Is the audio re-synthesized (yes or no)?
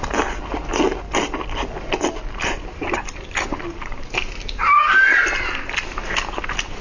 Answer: no